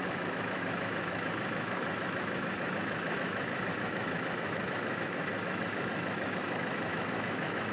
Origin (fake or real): fake